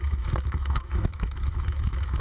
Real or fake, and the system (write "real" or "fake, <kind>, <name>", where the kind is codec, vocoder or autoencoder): fake, autoencoder, DAC-VAE